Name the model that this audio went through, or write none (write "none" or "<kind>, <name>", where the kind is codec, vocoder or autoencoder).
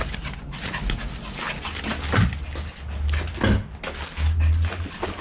none